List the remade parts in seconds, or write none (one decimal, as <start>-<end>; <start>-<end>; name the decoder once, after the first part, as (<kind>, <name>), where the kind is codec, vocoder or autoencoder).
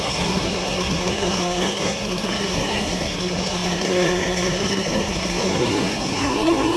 0.0-6.8 (codec, SNAC)